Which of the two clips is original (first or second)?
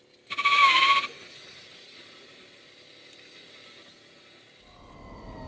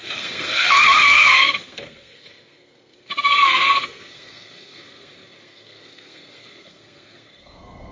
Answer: first